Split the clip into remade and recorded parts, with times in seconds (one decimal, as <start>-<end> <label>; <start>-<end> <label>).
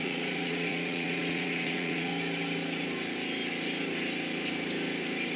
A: 0.0-2.1 remade; 2.1-5.4 recorded